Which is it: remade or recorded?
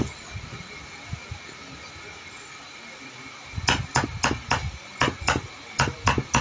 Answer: recorded